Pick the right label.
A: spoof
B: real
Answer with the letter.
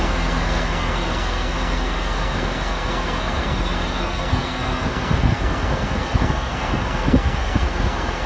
A